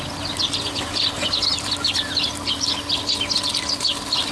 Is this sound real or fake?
real